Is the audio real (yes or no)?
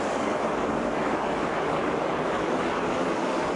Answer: no